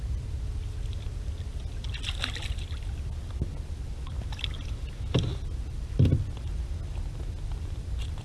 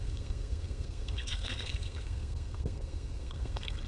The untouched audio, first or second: first